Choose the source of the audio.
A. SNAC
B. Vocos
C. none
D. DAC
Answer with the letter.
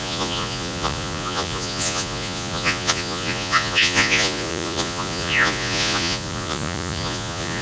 B